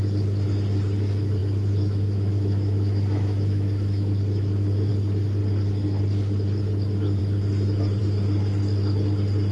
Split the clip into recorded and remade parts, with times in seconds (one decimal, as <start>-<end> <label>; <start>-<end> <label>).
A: 0.0-1.4 recorded; 1.4-4.9 remade; 4.9-9.5 recorded